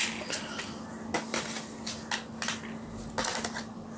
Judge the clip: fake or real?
real